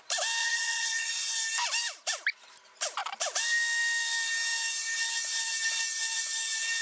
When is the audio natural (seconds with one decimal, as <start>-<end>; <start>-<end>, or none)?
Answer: 0.0-0.4; 1.1-6.8